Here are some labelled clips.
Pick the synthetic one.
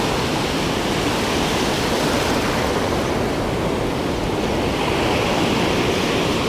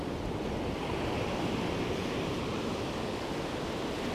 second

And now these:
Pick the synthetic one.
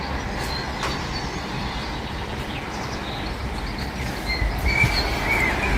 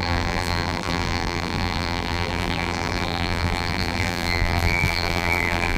second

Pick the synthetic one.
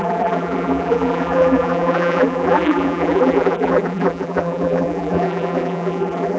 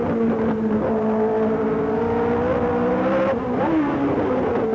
first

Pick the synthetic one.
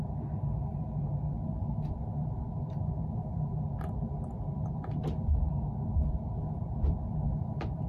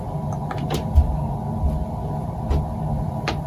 first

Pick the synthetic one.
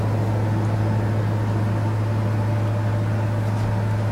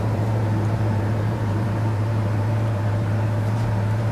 second